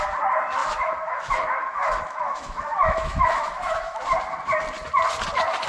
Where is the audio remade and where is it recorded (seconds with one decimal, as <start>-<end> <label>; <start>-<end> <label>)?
0.0-0.6 recorded; 0.6-4.0 remade; 4.0-5.7 recorded